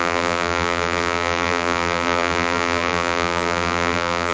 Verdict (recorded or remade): remade